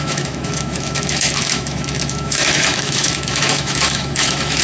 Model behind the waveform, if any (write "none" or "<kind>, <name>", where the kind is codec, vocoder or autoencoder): autoencoder, DAC-VAE